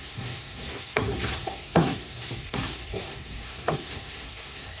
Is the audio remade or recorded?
remade